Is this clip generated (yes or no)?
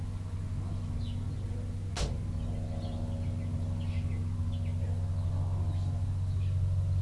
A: no